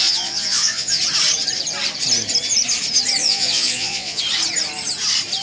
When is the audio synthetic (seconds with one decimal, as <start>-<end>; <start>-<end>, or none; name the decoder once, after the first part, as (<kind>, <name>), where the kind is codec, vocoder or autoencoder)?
0.0-1.0 (vocoder, Vocos); 3.2-4.2